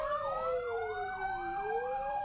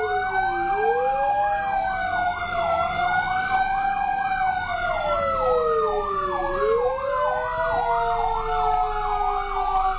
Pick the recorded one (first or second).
second